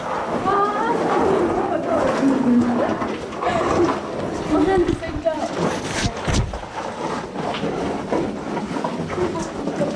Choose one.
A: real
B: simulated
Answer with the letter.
A